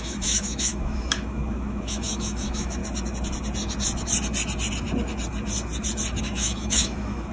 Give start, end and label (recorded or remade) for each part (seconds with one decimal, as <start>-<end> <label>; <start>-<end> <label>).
0.0-2.8 remade; 2.8-6.2 recorded; 6.2-7.3 remade